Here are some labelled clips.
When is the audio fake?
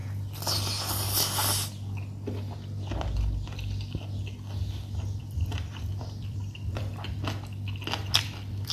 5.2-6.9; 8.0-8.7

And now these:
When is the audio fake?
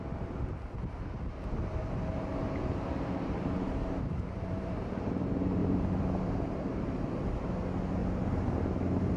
1.8-5.1; 5.6-7.2; 8.0-8.6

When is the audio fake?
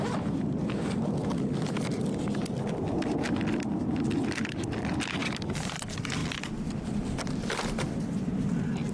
0.0-1.2; 2.0-6.2; 7.3-8.9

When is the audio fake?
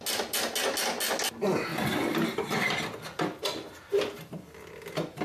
none